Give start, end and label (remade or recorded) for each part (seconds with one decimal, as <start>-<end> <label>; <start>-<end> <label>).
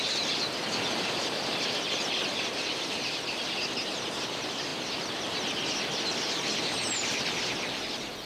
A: 0.0-8.3 recorded